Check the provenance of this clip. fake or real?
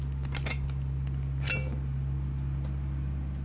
real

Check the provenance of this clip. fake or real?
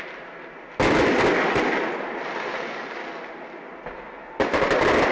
real